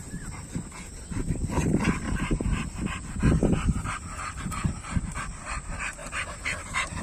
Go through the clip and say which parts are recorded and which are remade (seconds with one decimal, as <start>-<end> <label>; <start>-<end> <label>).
0.0-7.0 recorded